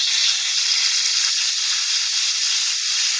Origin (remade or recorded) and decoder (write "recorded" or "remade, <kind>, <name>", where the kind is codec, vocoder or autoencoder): recorded